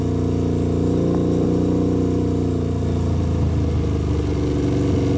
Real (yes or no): yes